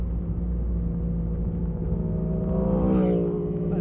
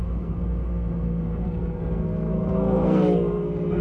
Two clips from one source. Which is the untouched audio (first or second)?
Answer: first